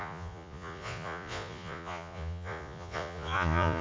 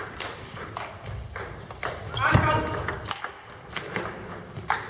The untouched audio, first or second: second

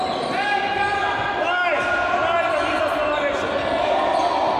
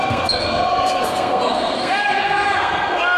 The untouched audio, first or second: first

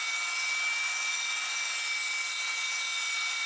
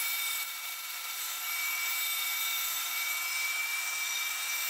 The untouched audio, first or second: first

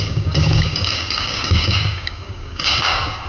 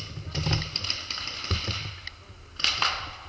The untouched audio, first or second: second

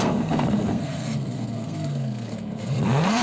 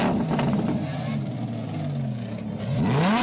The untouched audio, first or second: second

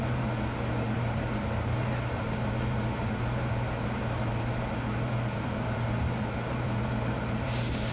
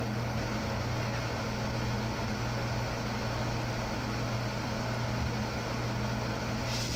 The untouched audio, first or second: second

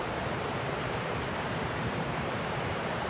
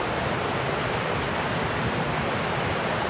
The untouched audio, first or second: second